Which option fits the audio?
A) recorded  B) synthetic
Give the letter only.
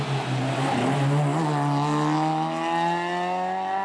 A